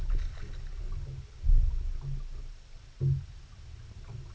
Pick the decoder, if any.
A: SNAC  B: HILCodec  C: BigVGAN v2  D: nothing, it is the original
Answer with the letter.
D